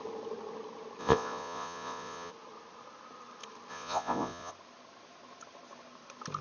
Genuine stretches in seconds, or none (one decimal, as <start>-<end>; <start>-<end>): 0.0-1.0; 2.3-3.7; 4.5-6.4